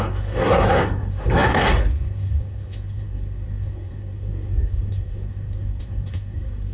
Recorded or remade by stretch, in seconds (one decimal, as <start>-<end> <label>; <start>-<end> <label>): 0.0-6.7 remade